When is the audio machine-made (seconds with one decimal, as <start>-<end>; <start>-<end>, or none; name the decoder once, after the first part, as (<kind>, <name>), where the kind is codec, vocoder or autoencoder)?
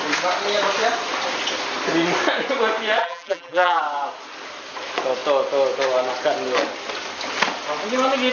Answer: 3.0-3.8 (vocoder, BigVGAN v2)